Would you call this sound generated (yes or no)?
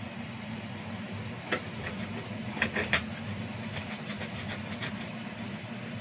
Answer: yes